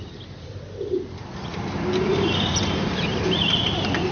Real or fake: real